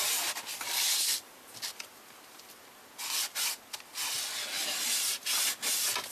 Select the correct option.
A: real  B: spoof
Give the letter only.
A